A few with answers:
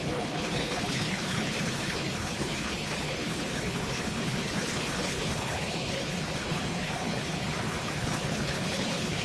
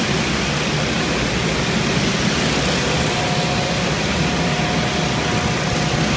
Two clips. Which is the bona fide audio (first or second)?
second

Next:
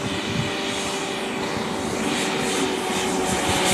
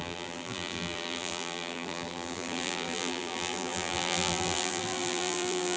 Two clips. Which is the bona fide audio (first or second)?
first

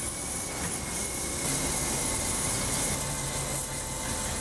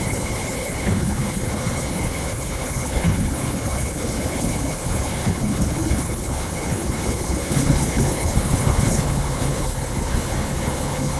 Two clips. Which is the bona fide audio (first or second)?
first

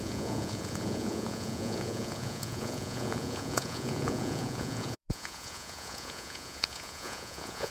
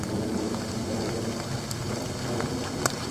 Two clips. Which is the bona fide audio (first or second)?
second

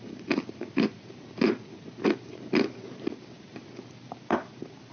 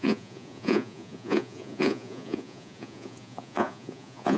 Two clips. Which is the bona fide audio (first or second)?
first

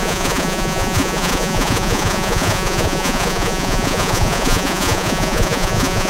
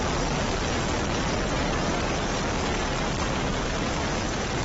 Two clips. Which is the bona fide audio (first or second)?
second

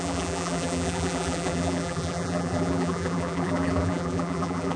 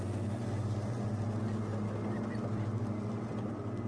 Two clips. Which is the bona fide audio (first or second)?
second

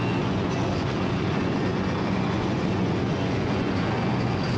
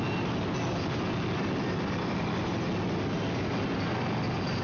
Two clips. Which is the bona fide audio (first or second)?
second